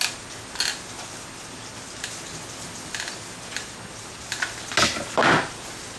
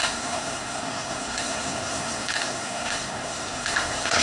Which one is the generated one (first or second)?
second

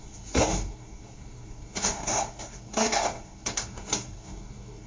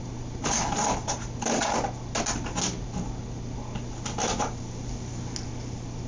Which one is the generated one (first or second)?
first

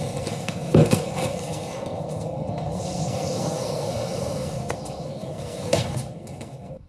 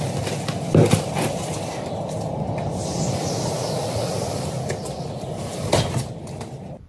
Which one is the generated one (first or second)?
first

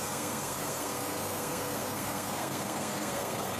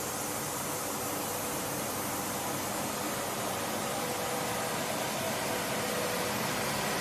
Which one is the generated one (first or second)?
first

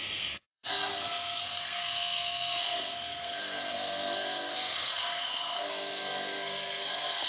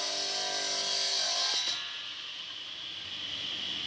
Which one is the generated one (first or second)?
first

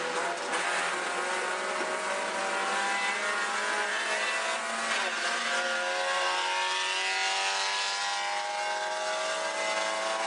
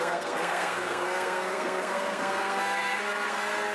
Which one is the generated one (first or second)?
second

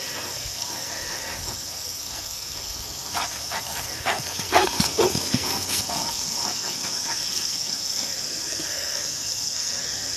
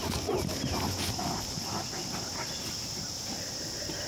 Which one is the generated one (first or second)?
first